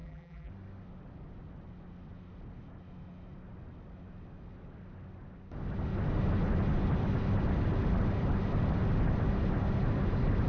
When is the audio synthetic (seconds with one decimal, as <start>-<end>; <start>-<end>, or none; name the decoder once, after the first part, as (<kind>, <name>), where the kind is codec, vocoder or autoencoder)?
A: 0.0-0.5 (vocoder, BigVGAN v2)